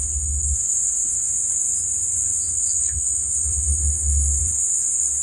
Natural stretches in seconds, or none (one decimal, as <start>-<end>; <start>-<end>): 1.3-2.3; 4.4-5.2